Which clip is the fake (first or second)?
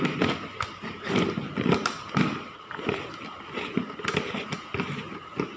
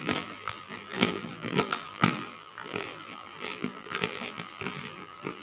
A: second